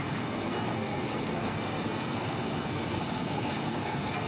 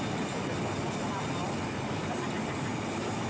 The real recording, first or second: second